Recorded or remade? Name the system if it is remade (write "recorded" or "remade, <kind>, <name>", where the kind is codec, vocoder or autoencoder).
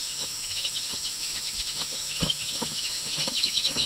remade, autoencoder, DAC-VAE